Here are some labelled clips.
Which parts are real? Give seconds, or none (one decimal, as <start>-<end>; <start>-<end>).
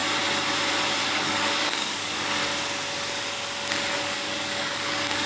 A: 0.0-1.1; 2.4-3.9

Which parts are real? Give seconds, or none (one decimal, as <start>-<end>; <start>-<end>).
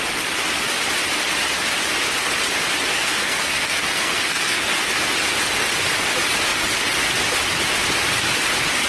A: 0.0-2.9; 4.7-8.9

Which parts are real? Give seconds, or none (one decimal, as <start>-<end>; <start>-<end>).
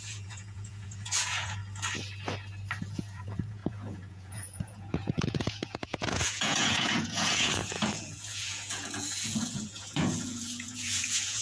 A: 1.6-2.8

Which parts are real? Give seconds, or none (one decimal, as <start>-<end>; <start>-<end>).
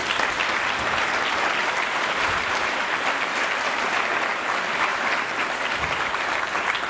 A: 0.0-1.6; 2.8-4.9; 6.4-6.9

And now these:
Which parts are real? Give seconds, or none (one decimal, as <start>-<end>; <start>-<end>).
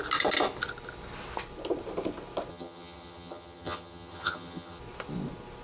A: 0.0-2.5; 4.8-5.6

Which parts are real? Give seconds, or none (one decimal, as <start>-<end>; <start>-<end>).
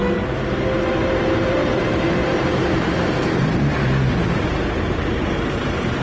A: 0.0-0.9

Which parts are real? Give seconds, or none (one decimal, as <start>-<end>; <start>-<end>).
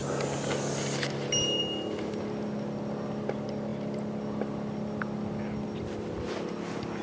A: 0.0-7.0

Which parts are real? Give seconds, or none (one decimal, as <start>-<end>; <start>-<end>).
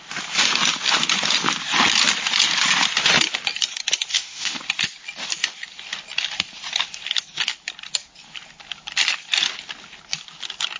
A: 0.0-4.1; 4.6-10.8